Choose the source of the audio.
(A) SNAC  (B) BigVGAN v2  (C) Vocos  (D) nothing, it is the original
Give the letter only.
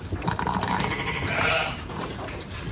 B